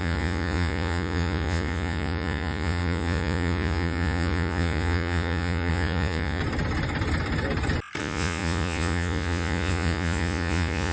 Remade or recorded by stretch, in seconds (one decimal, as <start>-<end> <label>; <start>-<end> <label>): 0.0-6.4 remade; 6.4-8.0 recorded; 8.0-10.9 remade